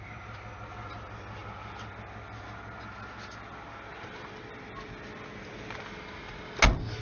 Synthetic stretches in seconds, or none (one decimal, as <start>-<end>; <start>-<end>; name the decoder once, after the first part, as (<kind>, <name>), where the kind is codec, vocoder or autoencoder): none